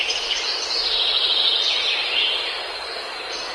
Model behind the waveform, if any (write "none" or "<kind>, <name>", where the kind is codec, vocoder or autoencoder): none